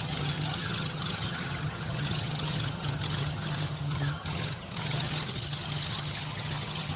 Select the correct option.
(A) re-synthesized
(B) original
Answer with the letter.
A